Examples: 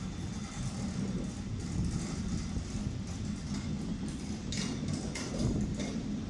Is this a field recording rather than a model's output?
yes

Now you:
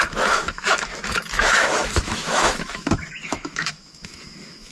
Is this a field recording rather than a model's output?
no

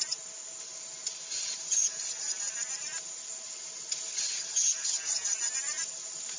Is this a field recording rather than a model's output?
yes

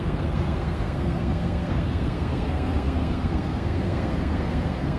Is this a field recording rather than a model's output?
no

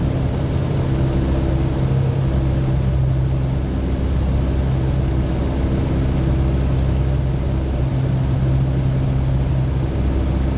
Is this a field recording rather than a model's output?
yes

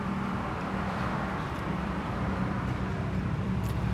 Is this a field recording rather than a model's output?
no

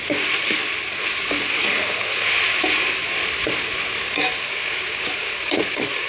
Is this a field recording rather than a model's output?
yes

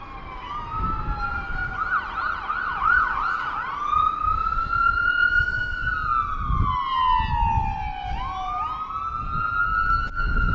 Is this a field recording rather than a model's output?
yes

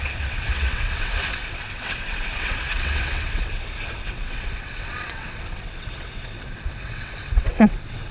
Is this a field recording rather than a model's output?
no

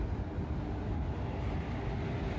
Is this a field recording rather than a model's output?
yes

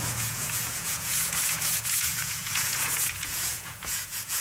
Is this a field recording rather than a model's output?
no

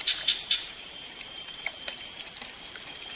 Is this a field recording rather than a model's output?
no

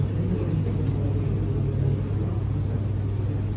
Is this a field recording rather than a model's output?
yes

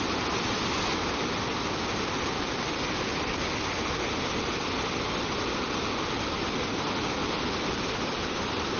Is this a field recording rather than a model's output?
yes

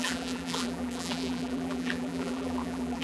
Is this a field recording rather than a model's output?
no